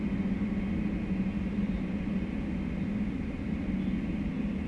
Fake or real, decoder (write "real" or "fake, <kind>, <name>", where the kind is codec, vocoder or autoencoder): real